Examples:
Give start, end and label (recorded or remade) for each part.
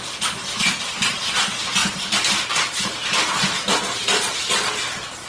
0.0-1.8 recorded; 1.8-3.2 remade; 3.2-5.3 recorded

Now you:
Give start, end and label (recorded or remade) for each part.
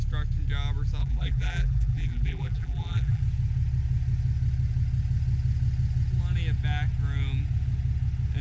0.0-1.0 recorded; 1.0-3.2 remade; 3.2-8.4 recorded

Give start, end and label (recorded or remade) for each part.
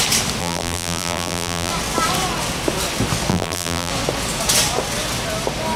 0.0-0.4 recorded; 0.4-1.7 remade; 1.7-3.3 recorded; 3.3-3.9 remade; 3.9-5.8 recorded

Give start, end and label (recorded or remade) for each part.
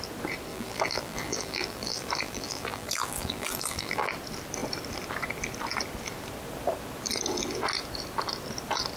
0.0-0.5 recorded; 0.5-4.1 remade; 4.1-9.0 recorded